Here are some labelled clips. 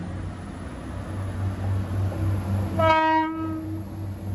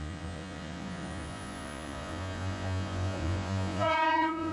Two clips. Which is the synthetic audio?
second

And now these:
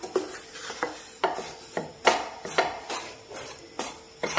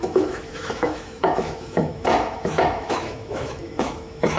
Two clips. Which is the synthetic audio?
second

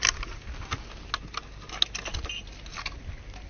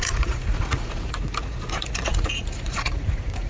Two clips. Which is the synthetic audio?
second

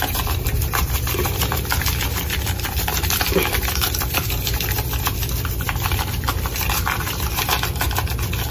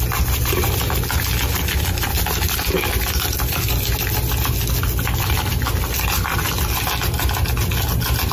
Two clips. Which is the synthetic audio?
first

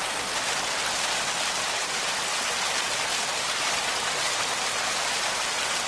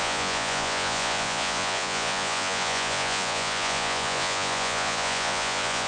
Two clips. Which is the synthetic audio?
second